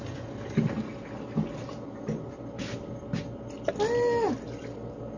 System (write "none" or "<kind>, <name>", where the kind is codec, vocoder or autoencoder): none